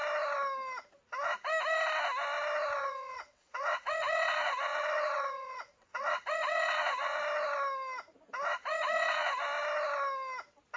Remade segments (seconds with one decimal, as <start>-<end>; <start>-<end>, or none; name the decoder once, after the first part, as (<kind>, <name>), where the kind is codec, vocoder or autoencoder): 2.8-7.2 (vocoder, WaveNeXt); 8.7-9.4